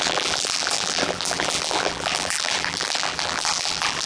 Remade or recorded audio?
remade